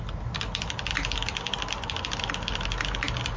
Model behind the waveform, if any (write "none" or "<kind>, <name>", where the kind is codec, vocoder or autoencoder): none